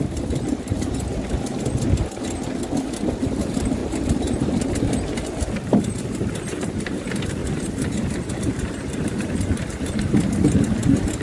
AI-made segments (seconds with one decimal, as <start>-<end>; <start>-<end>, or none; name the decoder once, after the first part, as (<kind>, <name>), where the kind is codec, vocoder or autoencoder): 0.0-1.5 (vocoder, BigVGAN v2); 3.2-11.2